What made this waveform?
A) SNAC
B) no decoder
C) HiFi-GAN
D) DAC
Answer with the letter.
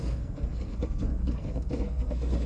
A